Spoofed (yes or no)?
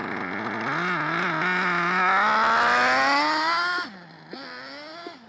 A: no